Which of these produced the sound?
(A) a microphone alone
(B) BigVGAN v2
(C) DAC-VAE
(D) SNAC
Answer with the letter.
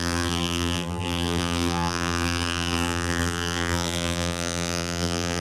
B